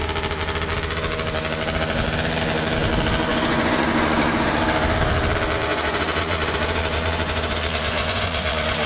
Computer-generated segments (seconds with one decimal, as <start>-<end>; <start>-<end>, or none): 3.3-4.6; 5.7-8.9